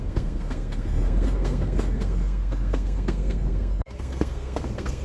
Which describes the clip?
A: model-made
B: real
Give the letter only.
A